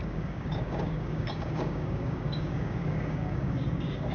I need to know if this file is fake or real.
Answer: fake